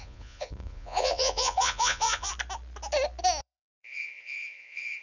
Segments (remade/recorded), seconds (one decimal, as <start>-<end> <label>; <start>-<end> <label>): 0.0-2.3 remade; 2.3-3.4 recorded; 3.4-5.0 remade